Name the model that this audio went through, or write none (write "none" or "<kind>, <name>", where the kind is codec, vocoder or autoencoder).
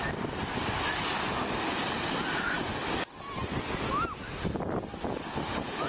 none